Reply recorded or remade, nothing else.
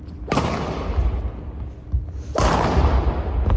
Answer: recorded